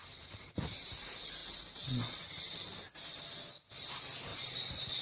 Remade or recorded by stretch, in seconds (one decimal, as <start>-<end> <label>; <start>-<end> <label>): 0.0-5.0 recorded